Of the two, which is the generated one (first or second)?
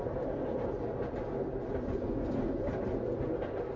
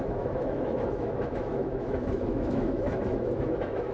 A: second